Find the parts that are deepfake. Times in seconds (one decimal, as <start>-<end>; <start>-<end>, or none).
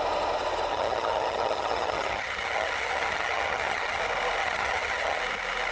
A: 0.7-4.0; 4.4-5.2